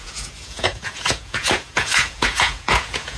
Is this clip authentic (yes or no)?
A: no